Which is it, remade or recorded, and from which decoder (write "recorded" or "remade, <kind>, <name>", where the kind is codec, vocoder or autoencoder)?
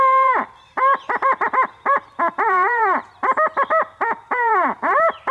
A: remade, vocoder, BigVGAN v2